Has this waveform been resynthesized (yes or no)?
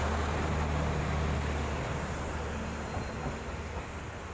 no